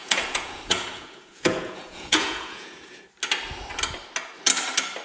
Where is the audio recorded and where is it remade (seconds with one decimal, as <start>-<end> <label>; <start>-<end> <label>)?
0.0-3.0 remade; 3.0-5.0 recorded